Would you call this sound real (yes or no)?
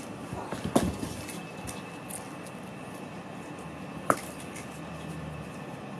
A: yes